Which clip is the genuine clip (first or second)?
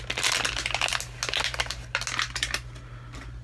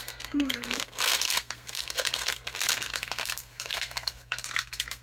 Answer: first